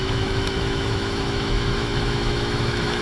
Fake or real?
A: fake